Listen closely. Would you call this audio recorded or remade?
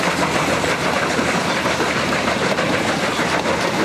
recorded